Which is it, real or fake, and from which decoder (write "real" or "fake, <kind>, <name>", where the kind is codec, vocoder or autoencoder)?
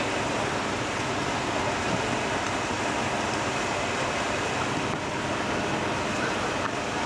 real